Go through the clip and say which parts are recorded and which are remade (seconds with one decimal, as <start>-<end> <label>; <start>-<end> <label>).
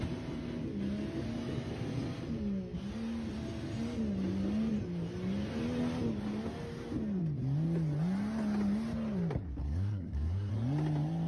0.0-9.6 recorded; 9.6-10.5 remade; 10.5-11.3 recorded